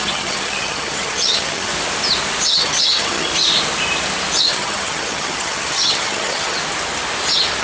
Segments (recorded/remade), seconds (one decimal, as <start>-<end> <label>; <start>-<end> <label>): 0.0-1.7 remade; 1.7-2.5 recorded; 2.5-3.3 remade; 3.3-4.4 recorded; 4.4-6.6 remade; 6.6-7.6 recorded